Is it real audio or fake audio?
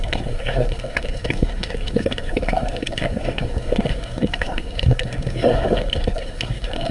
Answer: fake